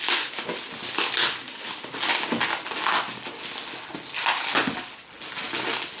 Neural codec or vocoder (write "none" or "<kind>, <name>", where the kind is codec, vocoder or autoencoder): none